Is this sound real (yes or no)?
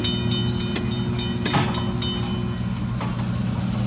yes